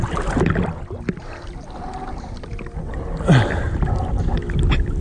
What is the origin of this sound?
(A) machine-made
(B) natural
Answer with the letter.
B